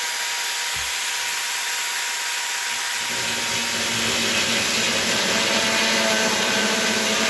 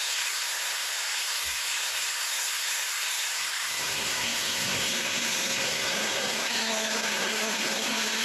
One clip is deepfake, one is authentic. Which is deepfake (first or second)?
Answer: second